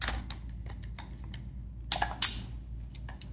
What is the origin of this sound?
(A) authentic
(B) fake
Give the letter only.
A